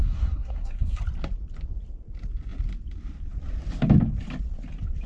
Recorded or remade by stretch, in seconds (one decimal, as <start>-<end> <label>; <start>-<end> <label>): 0.0-1.0 remade; 1.0-5.1 recorded